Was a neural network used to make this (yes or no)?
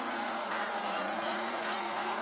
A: yes